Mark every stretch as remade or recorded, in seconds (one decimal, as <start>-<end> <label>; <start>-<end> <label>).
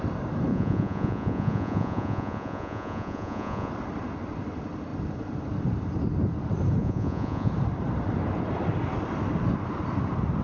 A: 0.0-0.5 recorded; 0.5-3.7 remade; 3.7-6.8 recorded; 6.8-7.5 remade; 7.5-10.4 recorded